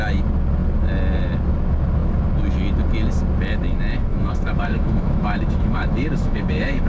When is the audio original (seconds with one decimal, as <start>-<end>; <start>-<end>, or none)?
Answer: 0.0-4.1

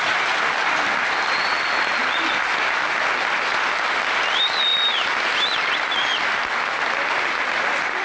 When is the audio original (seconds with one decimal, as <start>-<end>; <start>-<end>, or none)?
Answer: 0.0-8.0

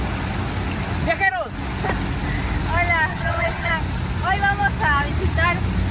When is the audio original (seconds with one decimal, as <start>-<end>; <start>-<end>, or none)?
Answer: 0.0-3.1; 3.7-5.9

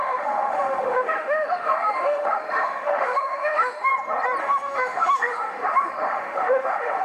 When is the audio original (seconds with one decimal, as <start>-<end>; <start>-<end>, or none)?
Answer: 3.9-4.4

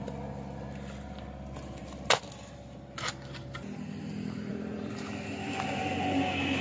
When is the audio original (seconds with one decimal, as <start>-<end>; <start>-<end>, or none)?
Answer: 0.0-6.6

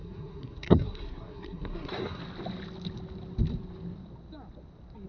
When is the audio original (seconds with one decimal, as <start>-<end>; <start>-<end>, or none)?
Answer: 2.2-5.1

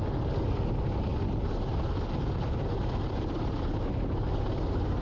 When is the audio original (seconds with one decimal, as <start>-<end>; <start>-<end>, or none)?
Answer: 0.0-5.0